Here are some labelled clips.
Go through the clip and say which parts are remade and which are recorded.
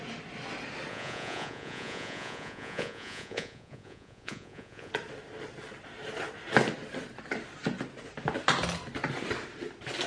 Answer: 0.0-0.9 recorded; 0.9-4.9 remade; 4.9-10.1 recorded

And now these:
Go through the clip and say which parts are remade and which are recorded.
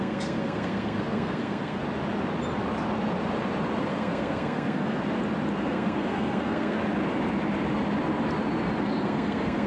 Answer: 0.0-1.8 remade; 1.8-3.8 recorded; 3.8-5.0 remade; 5.0-5.6 recorded; 5.6-6.8 remade; 6.8-8.8 recorded; 8.8-9.7 remade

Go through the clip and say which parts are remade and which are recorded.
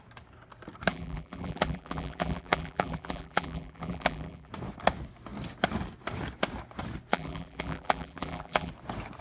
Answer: 0.0-0.9 recorded; 0.9-4.5 remade; 4.5-7.1 recorded; 7.1-8.7 remade; 8.7-9.2 recorded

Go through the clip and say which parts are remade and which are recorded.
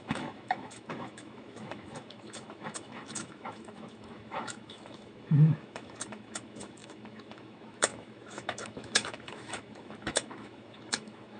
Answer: 0.0-11.4 remade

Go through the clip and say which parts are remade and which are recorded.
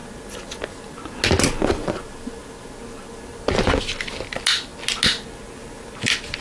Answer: 0.0-6.4 recorded